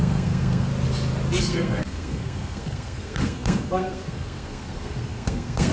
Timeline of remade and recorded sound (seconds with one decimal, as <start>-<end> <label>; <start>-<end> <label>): 0.0-0.7 remade; 0.7-1.4 recorded; 1.4-5.7 remade

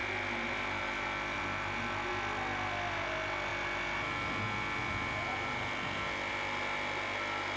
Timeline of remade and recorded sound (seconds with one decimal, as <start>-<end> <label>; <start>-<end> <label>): 0.0-7.6 recorded

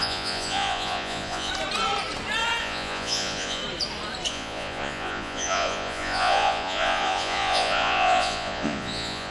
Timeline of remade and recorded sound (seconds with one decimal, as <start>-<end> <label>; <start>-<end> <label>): 0.0-1.5 remade; 1.5-2.6 recorded; 2.6-3.6 remade; 3.6-4.3 recorded; 4.3-9.3 remade